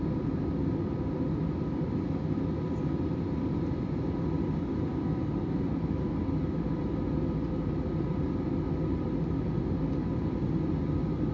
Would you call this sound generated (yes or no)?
no